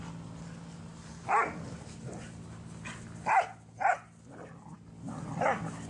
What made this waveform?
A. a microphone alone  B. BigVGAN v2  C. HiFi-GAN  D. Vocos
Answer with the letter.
A